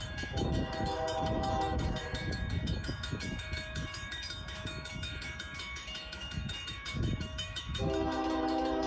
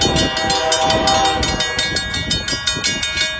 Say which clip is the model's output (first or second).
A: first